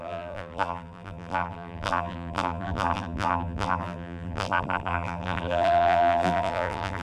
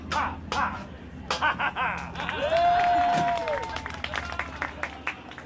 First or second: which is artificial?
first